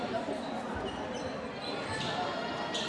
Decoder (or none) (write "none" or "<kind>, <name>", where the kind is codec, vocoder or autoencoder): none